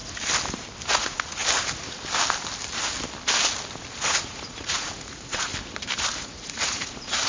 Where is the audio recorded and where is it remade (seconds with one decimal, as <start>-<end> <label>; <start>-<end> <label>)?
0.0-0.9 recorded; 0.9-1.4 remade; 1.4-4.0 recorded; 4.0-5.5 remade; 5.5-6.2 recorded; 6.2-7.3 remade